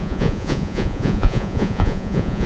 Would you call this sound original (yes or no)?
no